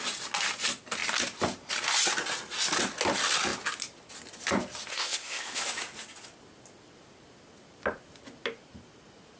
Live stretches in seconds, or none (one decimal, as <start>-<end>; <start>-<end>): 0.0-4.9; 5.6-9.4